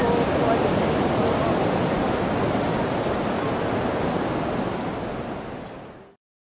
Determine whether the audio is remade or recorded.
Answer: recorded